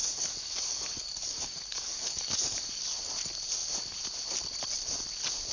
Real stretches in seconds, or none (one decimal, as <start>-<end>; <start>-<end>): 2.8-5.5